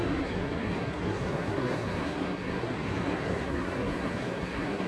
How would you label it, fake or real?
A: fake